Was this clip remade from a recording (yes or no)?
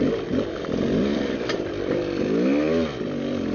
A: no